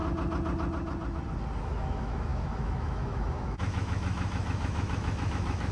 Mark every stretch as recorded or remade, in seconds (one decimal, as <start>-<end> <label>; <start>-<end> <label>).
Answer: 0.0-1.6 recorded; 1.6-5.7 remade